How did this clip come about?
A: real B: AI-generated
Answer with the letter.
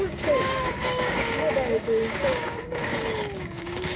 B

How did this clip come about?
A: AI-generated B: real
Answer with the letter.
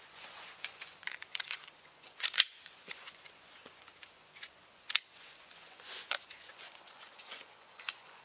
A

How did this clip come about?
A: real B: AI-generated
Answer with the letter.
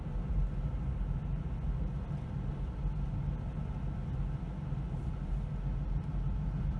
A